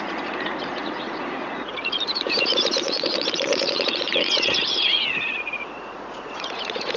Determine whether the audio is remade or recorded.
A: remade